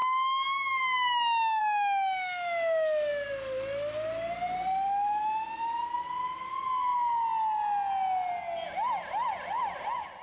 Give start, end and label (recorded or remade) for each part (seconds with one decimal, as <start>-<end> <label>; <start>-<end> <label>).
0.0-10.2 recorded